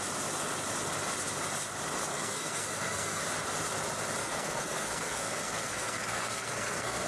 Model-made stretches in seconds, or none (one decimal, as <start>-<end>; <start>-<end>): 2.1-3.2; 4.2-7.1